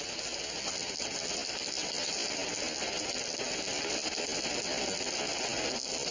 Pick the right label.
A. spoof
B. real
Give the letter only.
B